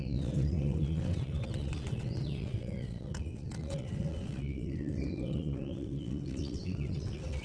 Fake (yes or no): yes